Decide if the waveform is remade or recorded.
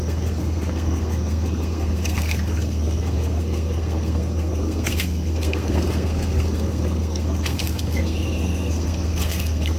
remade